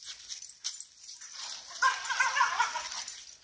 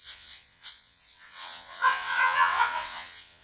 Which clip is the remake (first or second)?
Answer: second